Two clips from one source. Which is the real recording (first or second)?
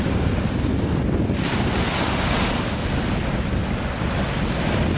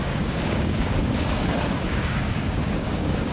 first